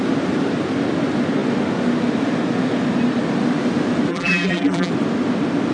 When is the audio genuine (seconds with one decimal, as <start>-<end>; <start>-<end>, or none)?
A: 0.0-4.1; 4.9-5.7